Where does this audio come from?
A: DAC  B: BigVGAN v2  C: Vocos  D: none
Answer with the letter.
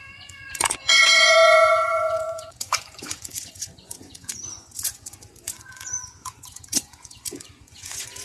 C